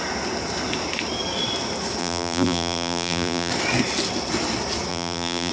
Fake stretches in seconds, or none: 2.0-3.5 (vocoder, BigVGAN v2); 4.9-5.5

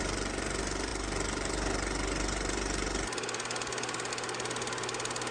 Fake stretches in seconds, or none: none

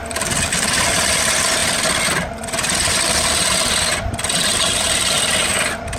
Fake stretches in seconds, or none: none